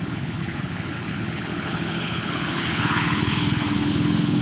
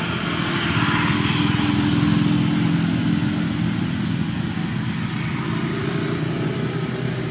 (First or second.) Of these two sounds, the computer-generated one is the first